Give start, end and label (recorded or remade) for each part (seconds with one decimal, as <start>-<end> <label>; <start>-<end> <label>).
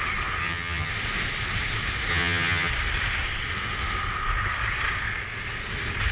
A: 0.0-0.4 recorded; 0.4-0.9 remade; 0.9-2.1 recorded; 2.1-2.7 remade; 2.7-6.1 recorded